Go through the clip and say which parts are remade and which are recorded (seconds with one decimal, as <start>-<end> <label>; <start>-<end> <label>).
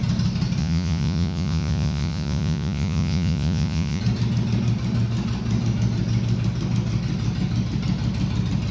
0.0-0.6 recorded; 0.6-4.0 remade; 4.0-8.7 recorded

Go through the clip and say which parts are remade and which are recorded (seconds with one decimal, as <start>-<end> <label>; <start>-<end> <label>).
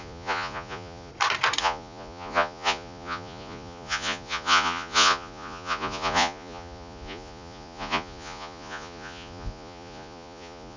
0.0-1.1 remade; 1.1-1.6 recorded; 1.6-10.8 remade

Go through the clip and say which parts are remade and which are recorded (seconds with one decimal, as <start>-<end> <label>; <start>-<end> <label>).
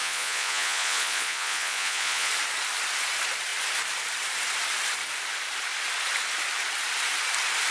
0.0-2.3 remade; 2.3-7.7 recorded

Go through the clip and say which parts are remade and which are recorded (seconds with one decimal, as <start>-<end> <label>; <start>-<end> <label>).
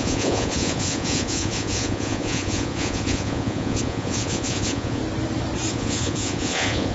0.0-5.0 remade; 5.0-5.7 recorded; 5.7-6.9 remade